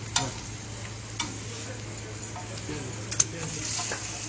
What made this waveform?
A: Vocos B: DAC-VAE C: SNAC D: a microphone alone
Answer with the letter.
D